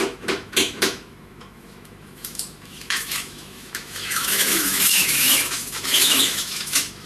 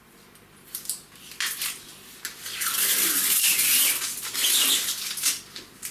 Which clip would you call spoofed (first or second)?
first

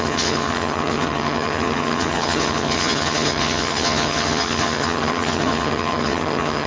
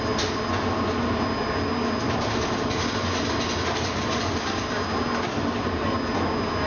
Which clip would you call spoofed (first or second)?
first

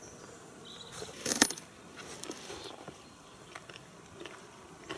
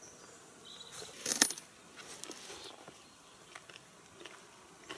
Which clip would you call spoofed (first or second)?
first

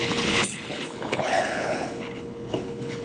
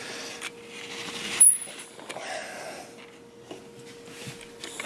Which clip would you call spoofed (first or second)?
first